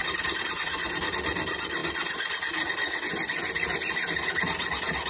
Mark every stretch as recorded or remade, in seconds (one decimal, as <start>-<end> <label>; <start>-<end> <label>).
0.0-1.0 remade; 1.0-5.1 recorded